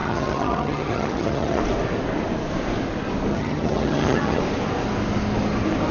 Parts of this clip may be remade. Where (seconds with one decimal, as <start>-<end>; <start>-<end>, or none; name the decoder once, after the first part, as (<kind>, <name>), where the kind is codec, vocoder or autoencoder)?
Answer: 0.0-1.6 (vocoder, HiFi-GAN); 3.3-4.4